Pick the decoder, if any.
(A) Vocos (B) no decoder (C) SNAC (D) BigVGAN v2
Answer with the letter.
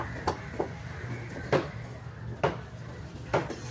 D